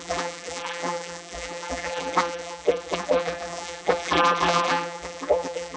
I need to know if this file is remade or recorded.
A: remade